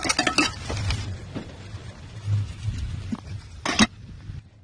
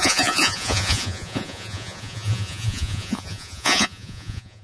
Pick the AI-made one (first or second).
second